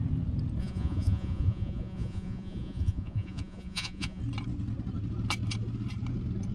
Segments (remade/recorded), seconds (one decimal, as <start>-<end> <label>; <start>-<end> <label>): 0.0-0.6 recorded; 0.6-4.2 remade; 4.2-6.5 recorded